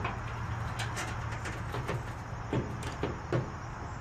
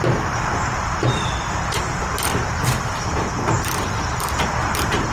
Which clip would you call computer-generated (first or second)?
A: second